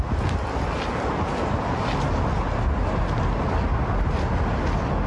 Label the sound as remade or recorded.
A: recorded